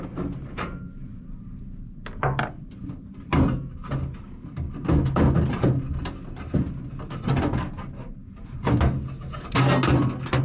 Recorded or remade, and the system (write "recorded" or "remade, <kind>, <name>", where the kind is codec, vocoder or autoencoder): recorded